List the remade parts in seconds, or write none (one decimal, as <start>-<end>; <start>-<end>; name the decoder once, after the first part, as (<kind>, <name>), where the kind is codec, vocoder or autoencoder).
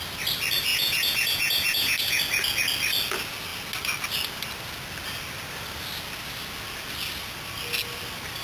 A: 0.7-2.2 (vocoder, Vocos)